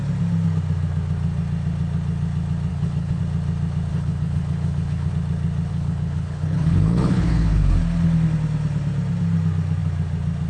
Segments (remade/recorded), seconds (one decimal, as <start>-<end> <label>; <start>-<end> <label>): 0.0-2.7 recorded; 2.7-3.2 remade; 3.2-3.9 recorded; 3.9-5.1 remade; 5.1-5.7 recorded; 5.7-7.7 remade; 7.7-10.5 recorded